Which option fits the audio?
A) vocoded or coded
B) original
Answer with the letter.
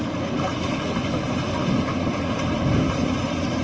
B